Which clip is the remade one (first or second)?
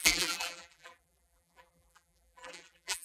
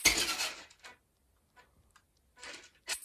first